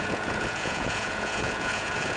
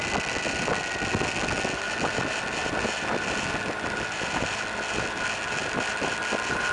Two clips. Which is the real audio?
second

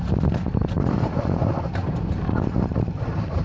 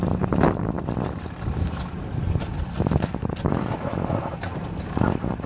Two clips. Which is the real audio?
second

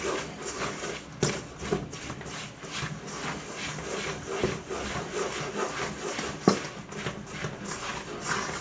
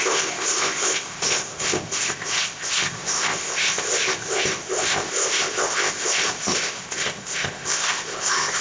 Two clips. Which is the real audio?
first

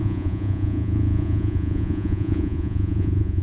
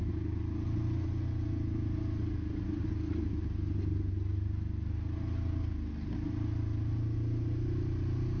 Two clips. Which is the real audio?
second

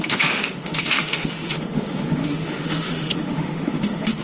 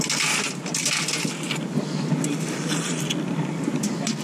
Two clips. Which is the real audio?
second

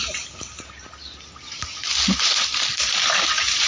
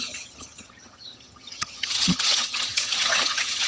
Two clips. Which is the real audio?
first